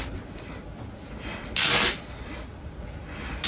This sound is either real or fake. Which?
real